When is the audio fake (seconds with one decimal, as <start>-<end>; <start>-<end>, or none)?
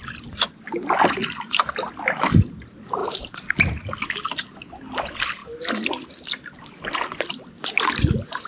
none